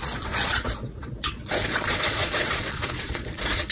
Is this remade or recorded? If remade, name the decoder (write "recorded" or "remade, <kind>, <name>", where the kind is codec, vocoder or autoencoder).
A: remade, vocoder, Vocos